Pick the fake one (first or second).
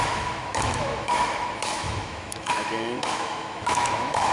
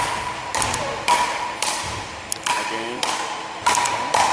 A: first